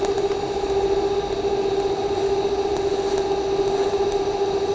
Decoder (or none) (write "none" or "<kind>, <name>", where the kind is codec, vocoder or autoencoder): none